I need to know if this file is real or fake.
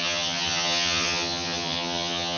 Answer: fake